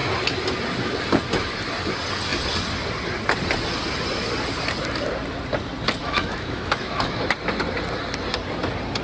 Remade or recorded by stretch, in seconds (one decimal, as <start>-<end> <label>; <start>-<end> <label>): 0.0-6.0 recorded; 6.0-7.2 remade; 7.2-9.0 recorded